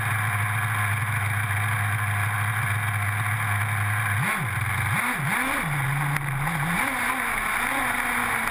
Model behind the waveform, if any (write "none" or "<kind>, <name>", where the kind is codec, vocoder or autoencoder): none